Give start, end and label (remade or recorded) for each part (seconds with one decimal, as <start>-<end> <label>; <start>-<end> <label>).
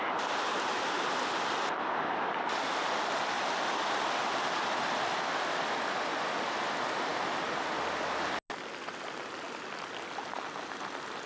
0.0-11.3 recorded